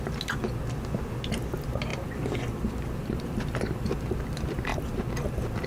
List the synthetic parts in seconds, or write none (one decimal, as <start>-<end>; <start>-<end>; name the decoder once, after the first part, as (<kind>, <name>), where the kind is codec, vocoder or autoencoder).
1.9-4.1 (vocoder, BigVGAN v2)